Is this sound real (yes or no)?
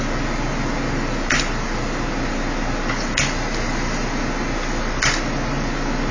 yes